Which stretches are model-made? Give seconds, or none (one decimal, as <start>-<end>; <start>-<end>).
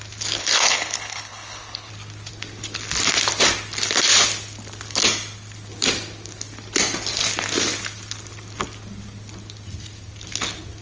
0.4-1.9